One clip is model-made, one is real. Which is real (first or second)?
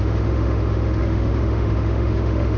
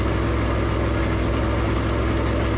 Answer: second